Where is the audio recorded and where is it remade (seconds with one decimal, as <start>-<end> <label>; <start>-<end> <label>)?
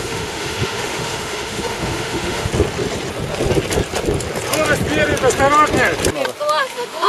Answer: 0.0-2.5 remade; 2.5-6.6 recorded; 6.6-7.1 remade